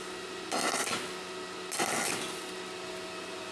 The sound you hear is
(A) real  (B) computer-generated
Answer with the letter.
A